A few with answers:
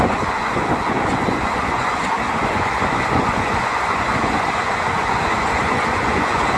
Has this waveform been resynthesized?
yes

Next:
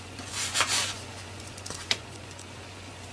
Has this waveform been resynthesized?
yes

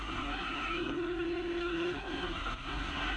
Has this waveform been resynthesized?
yes